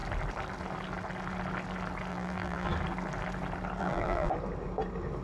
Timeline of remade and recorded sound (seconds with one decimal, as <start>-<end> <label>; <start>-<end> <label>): 0.0-2.1 recorded; 2.1-2.7 remade; 2.7-3.8 recorded; 3.8-4.3 remade; 4.3-5.2 recorded